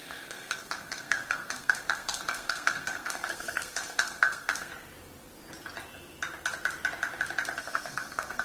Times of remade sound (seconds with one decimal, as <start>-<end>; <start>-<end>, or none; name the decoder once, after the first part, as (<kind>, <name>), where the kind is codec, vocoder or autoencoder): 0.0-4.7 (codec, SNAC); 7.6-8.4